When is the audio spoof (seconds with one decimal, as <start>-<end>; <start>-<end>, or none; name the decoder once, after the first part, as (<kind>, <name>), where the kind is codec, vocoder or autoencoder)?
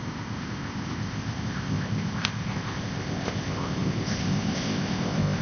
0.0-5.4 (codec, ZipCodec)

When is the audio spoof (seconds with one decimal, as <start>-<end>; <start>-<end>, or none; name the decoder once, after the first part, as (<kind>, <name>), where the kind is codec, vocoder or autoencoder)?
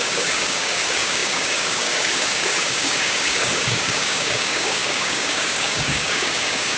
0.0-6.8 (codec, DAC)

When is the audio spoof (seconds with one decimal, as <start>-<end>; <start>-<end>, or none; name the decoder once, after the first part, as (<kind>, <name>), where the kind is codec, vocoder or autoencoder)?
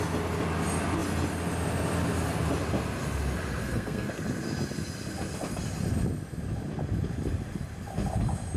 3.6-4.1 (codec, SNAC)